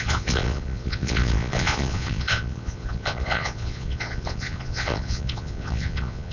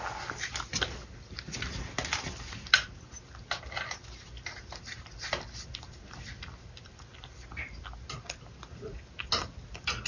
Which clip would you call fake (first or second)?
first